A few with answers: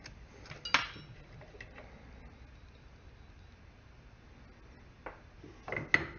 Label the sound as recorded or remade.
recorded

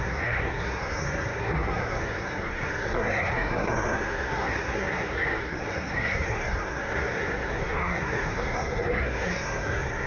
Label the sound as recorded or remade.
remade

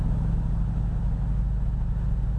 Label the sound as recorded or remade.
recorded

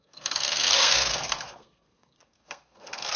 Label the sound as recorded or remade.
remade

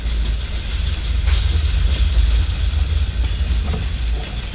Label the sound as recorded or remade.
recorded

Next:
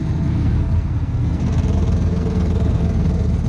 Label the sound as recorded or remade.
remade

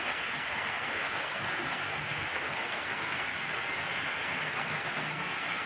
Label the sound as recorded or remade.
remade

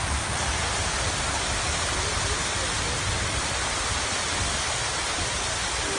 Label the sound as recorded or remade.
recorded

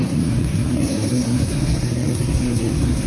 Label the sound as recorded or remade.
remade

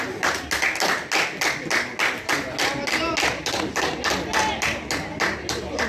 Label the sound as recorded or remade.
recorded